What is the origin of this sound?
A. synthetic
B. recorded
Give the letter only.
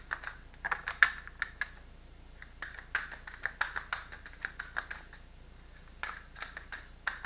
B